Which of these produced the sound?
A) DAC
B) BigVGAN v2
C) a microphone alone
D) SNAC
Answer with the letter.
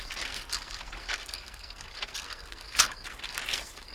D